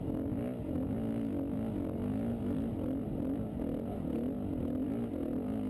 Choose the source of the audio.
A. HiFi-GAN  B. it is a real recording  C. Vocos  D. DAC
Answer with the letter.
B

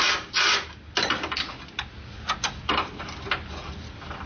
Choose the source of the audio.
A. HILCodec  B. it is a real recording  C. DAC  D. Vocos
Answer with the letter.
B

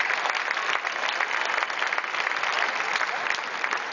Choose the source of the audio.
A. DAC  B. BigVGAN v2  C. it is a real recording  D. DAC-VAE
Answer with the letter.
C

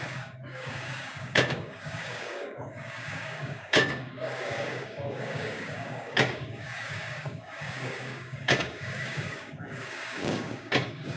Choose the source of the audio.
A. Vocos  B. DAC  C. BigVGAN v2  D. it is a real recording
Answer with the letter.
B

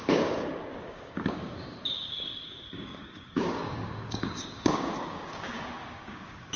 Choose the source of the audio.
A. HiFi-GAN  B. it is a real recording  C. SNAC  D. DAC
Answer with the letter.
D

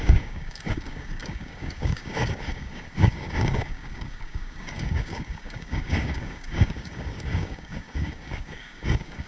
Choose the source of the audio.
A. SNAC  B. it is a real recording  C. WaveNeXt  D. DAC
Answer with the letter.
D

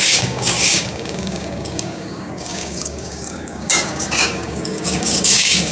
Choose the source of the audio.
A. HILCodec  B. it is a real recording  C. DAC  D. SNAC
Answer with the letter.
C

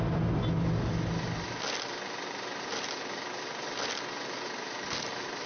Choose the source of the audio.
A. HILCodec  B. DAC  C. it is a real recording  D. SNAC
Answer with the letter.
C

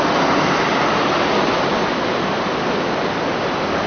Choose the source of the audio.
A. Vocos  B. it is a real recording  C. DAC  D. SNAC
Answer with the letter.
B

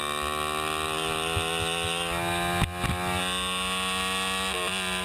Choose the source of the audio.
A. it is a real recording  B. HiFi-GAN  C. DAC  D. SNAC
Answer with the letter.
A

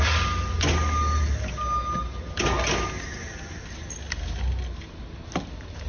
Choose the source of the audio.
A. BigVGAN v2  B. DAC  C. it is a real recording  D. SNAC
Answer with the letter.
C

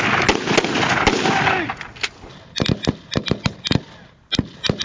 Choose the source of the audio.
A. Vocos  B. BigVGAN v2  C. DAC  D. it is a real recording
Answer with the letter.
D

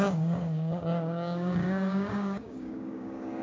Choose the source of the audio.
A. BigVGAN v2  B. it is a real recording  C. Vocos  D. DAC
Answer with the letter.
D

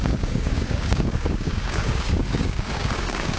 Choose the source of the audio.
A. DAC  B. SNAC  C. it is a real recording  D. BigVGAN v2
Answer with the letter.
A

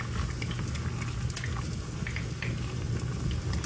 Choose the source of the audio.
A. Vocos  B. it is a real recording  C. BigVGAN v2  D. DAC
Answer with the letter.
B